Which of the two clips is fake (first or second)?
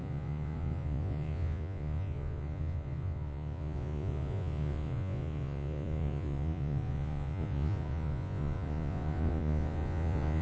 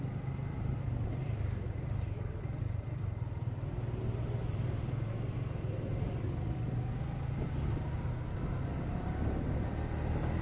first